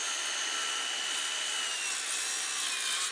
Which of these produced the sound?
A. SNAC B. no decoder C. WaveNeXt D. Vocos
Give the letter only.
B